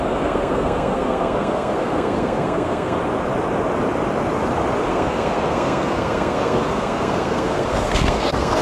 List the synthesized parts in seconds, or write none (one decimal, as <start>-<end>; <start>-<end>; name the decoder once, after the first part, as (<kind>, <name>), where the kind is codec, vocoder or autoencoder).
0.0-3.0 (codec, SNAC); 4.9-8.6